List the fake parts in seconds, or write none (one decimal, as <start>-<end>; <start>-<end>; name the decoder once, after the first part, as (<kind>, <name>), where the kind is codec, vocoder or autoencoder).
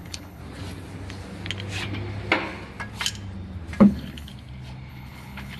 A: 0.0-0.4 (codec, HILCodec); 3.8-4.3; 4.9-5.6